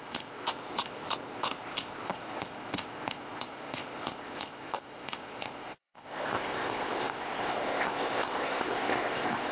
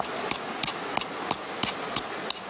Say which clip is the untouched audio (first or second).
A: second